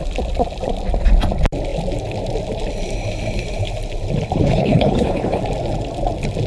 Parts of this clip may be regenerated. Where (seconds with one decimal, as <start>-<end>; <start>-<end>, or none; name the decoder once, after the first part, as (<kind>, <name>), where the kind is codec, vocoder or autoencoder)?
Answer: 4.4-5.4 (codec, HILCodec)